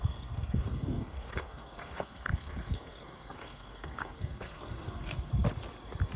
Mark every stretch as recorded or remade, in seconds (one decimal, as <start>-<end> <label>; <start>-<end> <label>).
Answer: 0.0-5.3 remade; 5.3-6.2 recorded